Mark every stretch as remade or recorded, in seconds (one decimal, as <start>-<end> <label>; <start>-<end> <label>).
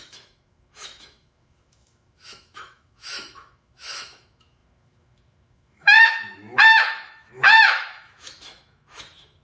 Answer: 0.0-9.4 remade